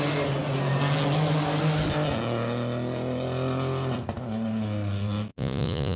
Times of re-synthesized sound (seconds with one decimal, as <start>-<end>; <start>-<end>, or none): 5.3-6.0